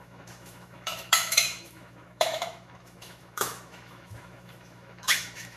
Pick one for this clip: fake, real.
fake